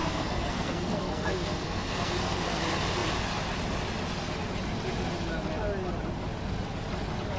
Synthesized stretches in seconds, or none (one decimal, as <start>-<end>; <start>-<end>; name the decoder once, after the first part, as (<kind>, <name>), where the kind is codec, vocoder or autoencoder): 0.0-2.6 (codec, SNAC)